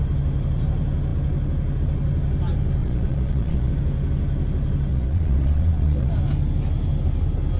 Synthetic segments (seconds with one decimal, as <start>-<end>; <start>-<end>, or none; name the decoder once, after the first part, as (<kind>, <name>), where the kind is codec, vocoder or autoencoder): 2.8-3.7 (vocoder, Vocos); 4.9-6.1